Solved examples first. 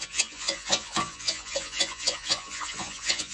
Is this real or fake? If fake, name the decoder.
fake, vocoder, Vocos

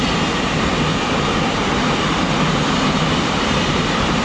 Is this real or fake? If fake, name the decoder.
real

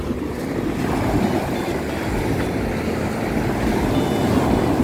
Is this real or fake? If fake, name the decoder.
real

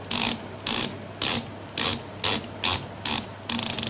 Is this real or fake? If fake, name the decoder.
real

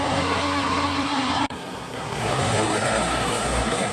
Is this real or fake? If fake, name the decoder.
fake, codec, SNAC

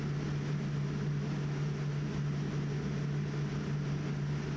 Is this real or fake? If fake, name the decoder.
real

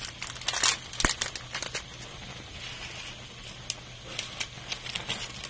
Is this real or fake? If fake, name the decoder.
real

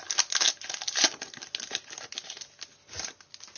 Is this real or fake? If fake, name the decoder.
real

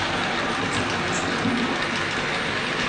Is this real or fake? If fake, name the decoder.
real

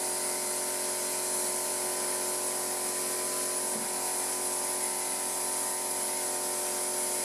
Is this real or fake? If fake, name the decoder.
real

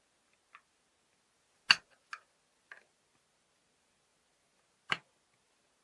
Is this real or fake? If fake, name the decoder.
real